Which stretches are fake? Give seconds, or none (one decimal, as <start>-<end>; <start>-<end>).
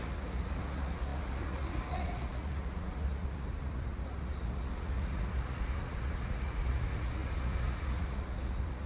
0.0-8.9